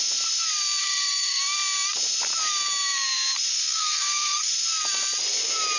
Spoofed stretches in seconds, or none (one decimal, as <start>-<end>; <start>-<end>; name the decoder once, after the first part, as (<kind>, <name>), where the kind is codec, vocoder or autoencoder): 0.8-1.4 (codec, SNAC); 3.5-4.5